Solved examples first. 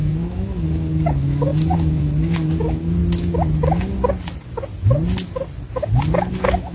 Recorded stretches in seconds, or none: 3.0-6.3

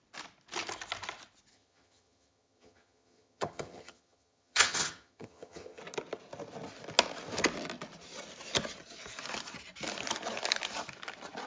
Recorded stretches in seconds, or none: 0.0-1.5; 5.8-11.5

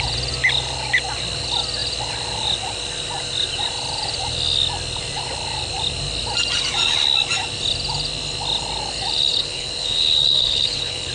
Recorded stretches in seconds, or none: 0.0-9.3

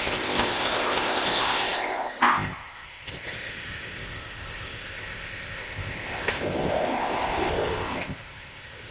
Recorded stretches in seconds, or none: none